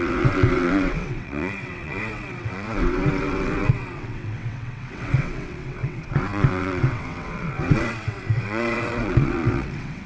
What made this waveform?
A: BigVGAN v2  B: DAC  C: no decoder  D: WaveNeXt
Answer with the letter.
D